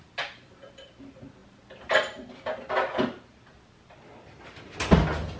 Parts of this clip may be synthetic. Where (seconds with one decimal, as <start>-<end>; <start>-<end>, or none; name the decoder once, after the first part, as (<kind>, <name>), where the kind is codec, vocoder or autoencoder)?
none